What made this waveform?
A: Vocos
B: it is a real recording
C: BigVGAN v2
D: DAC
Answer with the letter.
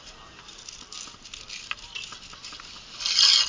B